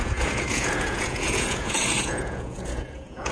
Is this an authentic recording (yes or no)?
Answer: no